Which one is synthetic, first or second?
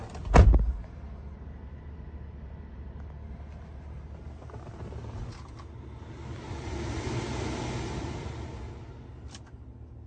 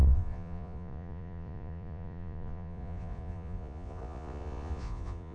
second